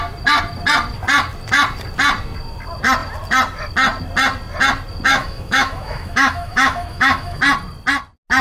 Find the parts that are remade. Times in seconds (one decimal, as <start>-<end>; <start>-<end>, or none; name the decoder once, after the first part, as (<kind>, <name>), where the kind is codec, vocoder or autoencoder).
5.1-7.4 (autoencoder, DAC-VAE)